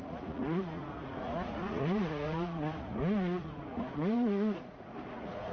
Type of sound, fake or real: fake